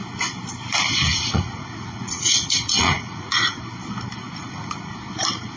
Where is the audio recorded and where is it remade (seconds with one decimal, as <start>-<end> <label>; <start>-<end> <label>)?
0.0-1.1 recorded; 1.1-3.6 remade; 3.6-4.2 recorded; 4.2-4.9 remade; 4.9-5.6 recorded